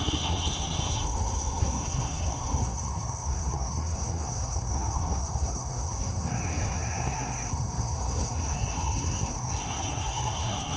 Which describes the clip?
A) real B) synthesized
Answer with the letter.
B